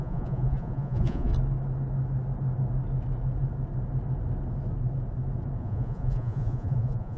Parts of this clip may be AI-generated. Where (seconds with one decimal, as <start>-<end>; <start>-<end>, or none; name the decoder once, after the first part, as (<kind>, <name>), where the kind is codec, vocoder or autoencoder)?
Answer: 0.0-1.3 (vocoder, Vocos); 5.6-7.2